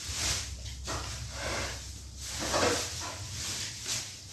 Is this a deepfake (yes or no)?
no